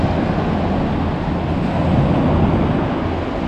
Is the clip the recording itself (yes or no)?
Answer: yes